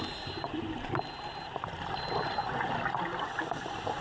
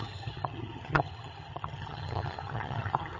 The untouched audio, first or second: first